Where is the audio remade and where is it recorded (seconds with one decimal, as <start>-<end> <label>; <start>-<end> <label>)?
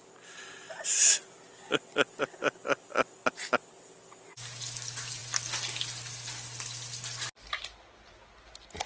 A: 0.0-8.9 recorded